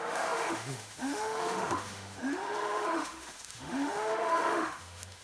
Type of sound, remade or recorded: remade